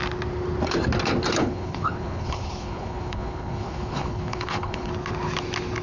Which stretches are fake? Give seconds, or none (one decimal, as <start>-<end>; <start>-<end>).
1.4-4.9